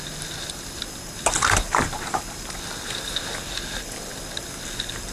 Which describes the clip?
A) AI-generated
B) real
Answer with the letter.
B